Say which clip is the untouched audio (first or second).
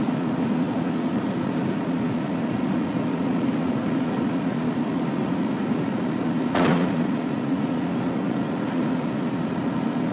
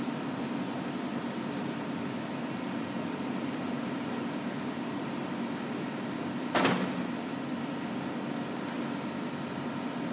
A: second